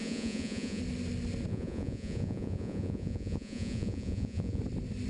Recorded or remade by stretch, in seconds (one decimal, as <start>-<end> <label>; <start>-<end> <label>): 0.0-0.8 remade; 0.8-1.5 recorded; 1.5-4.6 remade; 4.6-5.1 recorded